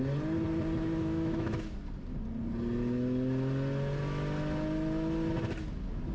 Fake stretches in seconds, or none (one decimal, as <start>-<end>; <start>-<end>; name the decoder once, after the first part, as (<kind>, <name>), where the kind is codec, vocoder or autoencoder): 1.0-1.6 (autoencoder, DAC-VAE)